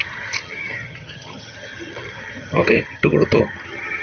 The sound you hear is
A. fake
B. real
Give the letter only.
A